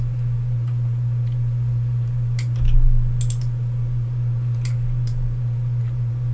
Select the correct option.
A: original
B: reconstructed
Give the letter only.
A